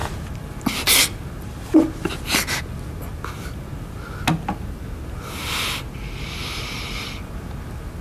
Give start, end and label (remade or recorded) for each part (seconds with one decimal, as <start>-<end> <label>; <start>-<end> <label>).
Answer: 0.0-8.0 recorded